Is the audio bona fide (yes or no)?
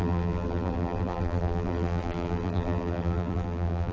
no